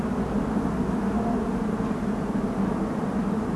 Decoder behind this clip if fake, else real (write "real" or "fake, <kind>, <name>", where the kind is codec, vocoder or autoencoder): real